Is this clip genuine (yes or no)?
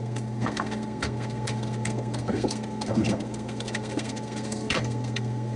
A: no